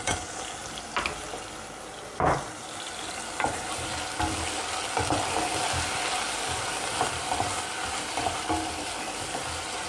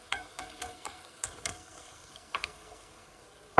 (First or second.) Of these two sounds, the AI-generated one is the second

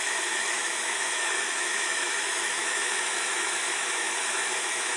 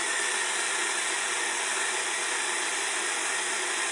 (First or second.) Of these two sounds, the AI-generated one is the first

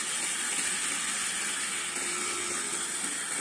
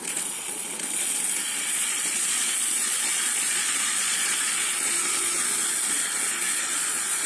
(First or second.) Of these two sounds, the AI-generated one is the second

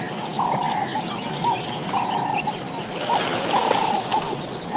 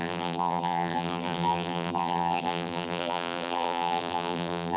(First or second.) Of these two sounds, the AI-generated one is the second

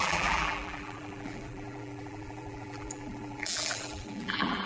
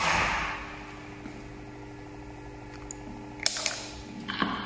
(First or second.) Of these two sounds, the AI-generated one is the first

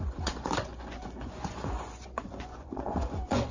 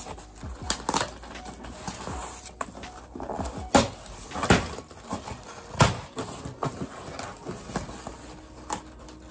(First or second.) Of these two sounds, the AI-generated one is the first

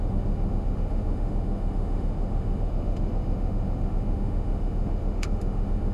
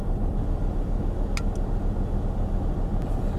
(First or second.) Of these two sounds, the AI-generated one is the first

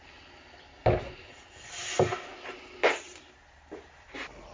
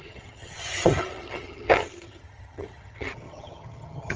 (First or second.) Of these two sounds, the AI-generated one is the second